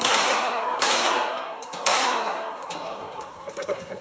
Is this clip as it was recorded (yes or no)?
no